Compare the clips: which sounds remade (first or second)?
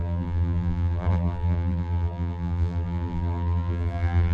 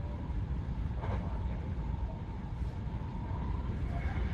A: first